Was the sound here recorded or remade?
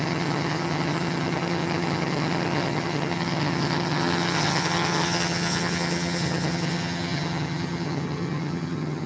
remade